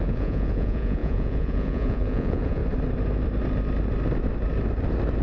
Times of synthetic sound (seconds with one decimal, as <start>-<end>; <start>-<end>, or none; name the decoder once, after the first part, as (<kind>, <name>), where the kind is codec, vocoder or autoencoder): 0.0-2.6 (vocoder, Vocos)